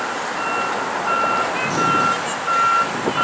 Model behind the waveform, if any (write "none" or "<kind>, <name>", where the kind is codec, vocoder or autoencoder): none